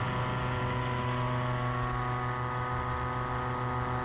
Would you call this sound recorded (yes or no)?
yes